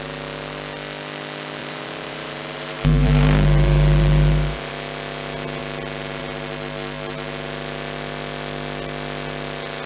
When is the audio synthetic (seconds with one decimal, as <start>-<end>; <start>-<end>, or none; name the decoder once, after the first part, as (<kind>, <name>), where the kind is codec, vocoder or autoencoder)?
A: 1.6-4.7 (vocoder, BigVGAN v2)